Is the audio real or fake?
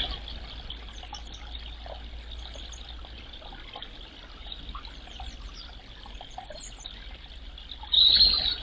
real